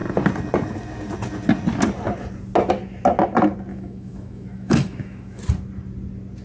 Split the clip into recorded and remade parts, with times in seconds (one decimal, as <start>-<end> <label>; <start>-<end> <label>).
0.0-3.7 recorded; 3.7-5.4 remade; 5.4-6.4 recorded